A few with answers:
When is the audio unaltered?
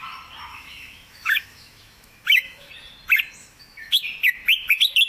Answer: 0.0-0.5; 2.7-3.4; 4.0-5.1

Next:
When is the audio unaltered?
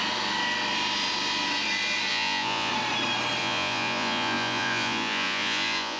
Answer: 0.0-2.1; 2.7-3.4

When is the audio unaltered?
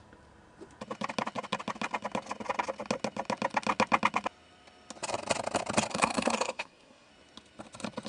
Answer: 0.0-5.9; 7.1-8.1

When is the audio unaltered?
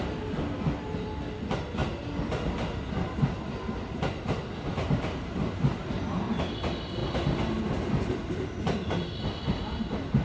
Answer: 0.0-10.2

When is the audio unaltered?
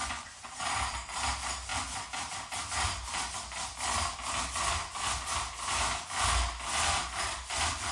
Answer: 0.6-7.9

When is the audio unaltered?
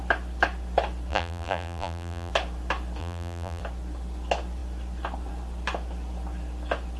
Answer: 0.0-1.1; 2.3-3.0; 3.6-7.0